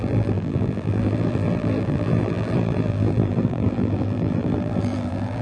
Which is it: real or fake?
fake